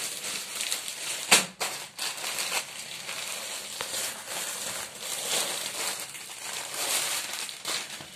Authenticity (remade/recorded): recorded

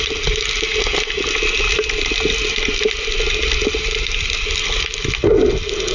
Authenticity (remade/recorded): recorded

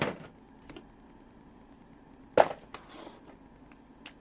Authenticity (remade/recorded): recorded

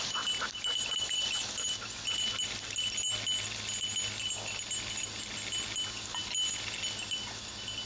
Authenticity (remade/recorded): recorded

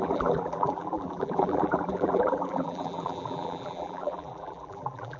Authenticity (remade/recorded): remade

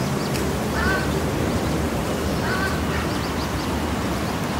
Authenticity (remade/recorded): recorded